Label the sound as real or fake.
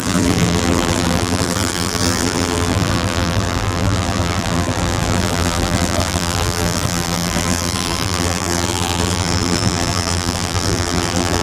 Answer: fake